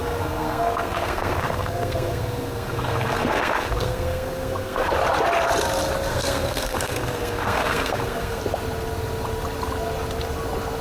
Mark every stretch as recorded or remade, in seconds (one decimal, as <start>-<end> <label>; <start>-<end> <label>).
0.0-4.9 remade; 4.9-6.1 recorded; 6.1-8.4 remade; 8.4-10.8 recorded

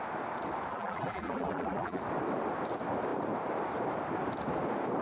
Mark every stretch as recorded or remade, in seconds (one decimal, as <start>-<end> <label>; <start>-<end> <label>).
0.0-0.7 recorded; 0.7-2.0 remade; 2.0-5.0 recorded

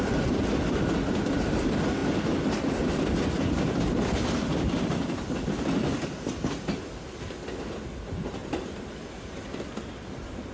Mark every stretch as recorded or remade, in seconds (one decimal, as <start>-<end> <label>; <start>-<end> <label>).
0.0-8.4 recorded; 8.4-8.9 remade; 8.9-10.5 recorded

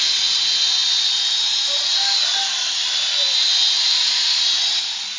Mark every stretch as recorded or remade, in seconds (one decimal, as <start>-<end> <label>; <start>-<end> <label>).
0.0-5.2 recorded